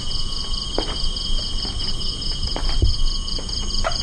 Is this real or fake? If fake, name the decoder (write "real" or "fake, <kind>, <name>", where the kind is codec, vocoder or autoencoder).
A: real